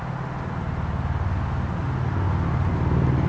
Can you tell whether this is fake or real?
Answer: real